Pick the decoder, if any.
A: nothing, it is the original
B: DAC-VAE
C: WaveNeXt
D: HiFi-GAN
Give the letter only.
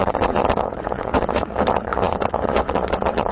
C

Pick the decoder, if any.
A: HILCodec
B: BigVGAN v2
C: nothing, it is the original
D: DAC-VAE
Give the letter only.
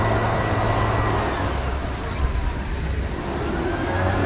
C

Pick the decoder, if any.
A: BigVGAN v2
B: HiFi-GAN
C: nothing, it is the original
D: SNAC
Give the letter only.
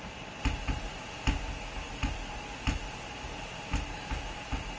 C